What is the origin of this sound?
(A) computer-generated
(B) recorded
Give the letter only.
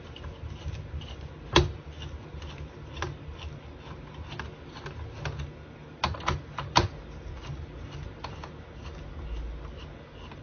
B